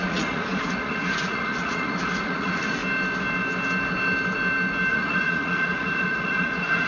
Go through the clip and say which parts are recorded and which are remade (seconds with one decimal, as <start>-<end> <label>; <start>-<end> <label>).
0.0-2.8 remade; 2.8-4.9 recorded; 4.9-6.9 remade